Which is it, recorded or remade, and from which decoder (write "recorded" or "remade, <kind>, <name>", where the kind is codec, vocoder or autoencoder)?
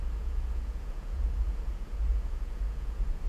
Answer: remade, vocoder, Vocos